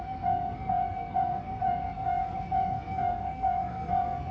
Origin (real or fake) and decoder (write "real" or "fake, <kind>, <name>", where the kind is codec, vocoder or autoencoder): fake, codec, SNAC